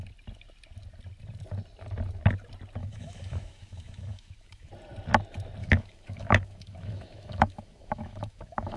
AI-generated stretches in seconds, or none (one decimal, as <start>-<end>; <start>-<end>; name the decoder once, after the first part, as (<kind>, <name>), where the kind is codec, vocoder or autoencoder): 2.8-4.7 (autoencoder, DAC-VAE); 5.6-8.8